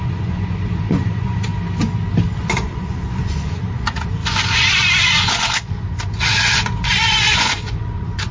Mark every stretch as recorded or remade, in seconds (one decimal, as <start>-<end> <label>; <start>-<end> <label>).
0.0-1.5 remade; 1.5-2.4 recorded; 2.4-8.3 remade